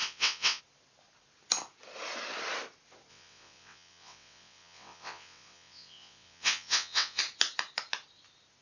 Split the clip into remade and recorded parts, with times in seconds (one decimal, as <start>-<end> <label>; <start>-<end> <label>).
0.0-0.6 remade; 0.6-3.1 recorded; 3.1-7.2 remade; 7.2-8.6 recorded